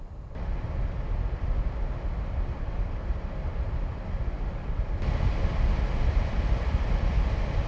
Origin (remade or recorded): recorded